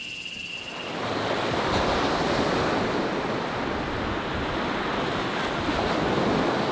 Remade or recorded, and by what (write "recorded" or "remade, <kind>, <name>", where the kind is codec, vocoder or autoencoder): recorded